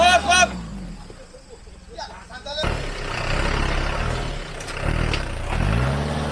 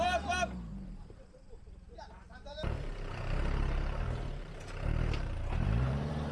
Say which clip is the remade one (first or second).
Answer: second